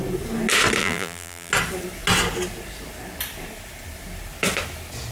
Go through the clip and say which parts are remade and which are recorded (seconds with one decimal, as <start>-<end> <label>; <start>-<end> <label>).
0.0-0.8 recorded; 0.8-1.5 remade; 1.5-5.1 recorded